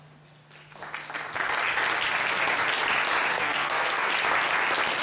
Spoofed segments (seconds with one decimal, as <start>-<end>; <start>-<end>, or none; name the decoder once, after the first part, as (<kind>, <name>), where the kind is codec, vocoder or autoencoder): 3.3-4.1 (codec, SNAC)